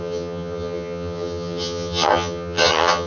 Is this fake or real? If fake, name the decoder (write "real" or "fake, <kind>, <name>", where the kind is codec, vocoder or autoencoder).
fake, vocoder, HiFi-GAN